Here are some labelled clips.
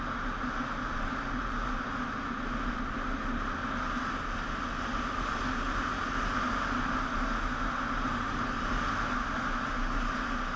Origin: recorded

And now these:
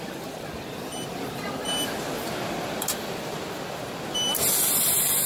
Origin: recorded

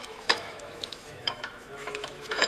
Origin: remade